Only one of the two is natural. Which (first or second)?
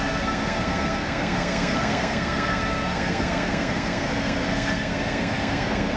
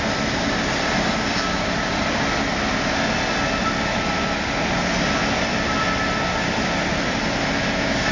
second